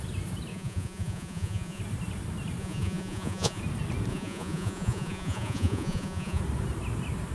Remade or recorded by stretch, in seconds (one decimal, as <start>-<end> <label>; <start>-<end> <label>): 0.0-0.5 recorded; 0.5-1.8 remade; 1.8-2.6 recorded; 2.6-3.6 remade; 3.6-4.1 recorded; 4.1-6.4 remade; 6.4-7.3 recorded